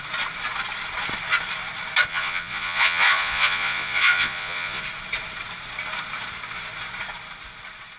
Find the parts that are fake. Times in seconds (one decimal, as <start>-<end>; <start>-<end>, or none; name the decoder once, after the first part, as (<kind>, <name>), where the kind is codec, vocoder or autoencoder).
2.1-4.8 (vocoder, Vocos)